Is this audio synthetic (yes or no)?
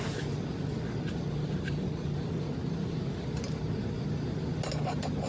no